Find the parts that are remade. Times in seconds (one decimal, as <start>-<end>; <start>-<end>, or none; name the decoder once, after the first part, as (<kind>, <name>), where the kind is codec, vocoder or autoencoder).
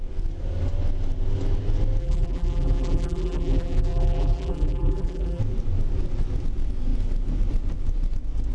2.0-5.4 (vocoder, BigVGAN v2)